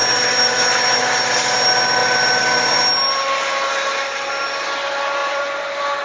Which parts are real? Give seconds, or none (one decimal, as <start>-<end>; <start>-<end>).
1.5-5.2